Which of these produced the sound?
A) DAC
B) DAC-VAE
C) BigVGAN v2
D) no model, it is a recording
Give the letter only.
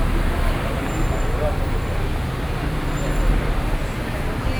D